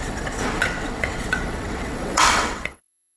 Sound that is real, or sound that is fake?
fake